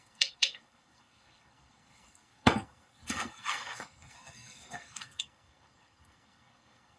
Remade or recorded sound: remade